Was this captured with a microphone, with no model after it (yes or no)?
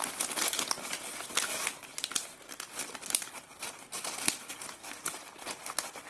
yes